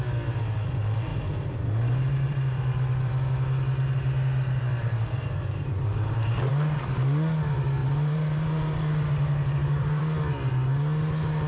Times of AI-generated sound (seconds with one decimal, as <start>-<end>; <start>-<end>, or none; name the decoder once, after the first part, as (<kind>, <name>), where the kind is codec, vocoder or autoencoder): 1.1-3.1 (vocoder, BigVGAN v2); 4.8-6.5; 7.8-10.0